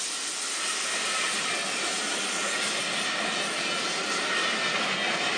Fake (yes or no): no